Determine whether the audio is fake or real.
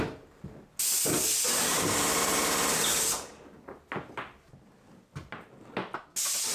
real